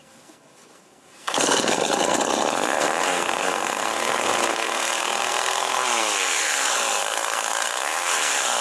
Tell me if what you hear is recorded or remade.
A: remade